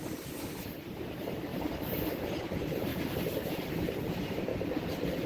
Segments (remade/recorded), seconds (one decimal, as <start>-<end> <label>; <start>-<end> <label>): 0.0-5.3 remade